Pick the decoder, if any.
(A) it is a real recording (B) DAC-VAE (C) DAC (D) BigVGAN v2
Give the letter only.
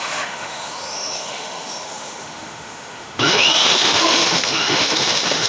B